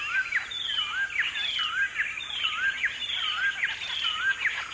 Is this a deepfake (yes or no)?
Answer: no